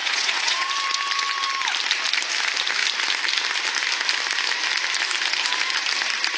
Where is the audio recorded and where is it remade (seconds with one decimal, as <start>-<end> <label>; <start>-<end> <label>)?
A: 0.0-0.7 remade; 0.7-6.4 recorded